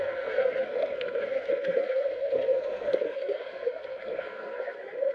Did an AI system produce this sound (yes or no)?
yes